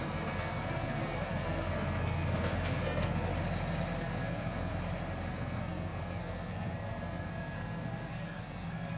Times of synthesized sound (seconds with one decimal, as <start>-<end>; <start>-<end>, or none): 0.0-3.3; 4.0-4.7; 5.3-9.0